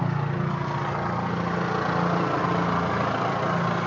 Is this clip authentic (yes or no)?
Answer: yes